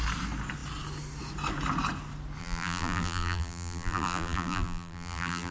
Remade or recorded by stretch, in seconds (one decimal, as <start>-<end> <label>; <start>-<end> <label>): 0.0-2.4 recorded; 2.4-5.5 remade

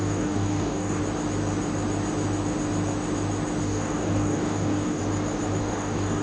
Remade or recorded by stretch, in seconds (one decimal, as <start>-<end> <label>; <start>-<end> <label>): 0.0-1.0 remade; 1.0-3.6 recorded; 3.6-5.0 remade; 5.0-5.6 recorded; 5.6-6.2 remade